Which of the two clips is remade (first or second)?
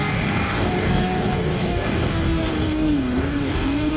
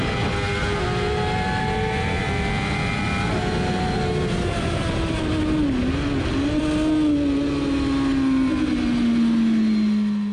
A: first